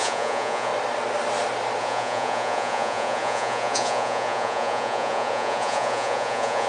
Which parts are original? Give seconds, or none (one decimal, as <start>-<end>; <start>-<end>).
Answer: 0.7-1.8